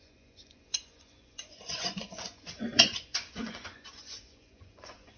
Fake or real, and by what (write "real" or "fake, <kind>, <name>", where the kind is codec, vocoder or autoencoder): fake, vocoder, Vocos